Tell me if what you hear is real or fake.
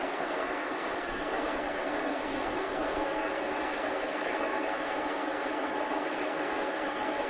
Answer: fake